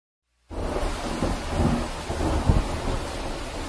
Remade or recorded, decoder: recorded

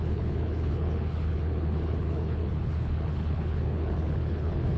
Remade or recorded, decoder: remade, codec, HILCodec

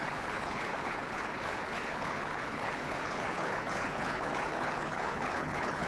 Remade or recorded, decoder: remade, codec, HILCodec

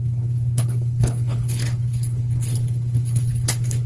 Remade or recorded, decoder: remade, codec, HILCodec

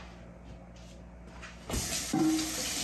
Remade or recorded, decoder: recorded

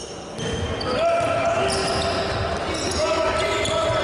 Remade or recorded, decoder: recorded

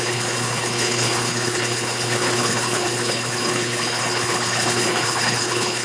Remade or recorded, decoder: remade, codec, HILCodec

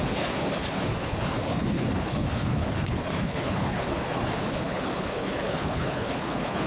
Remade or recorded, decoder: remade, codec, HILCodec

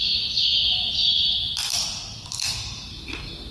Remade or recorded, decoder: recorded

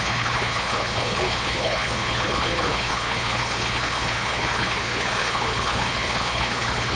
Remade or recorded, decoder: remade, codec, HILCodec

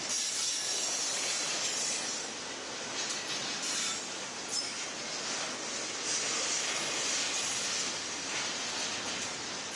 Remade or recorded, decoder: recorded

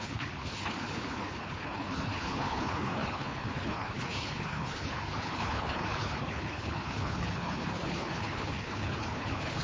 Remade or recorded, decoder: remade, codec, HILCodec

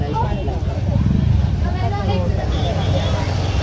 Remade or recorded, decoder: recorded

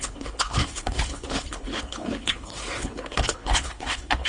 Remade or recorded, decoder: remade, codec, HILCodec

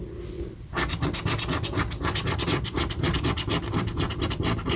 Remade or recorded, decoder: recorded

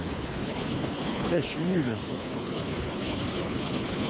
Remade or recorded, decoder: remade, codec, HILCodec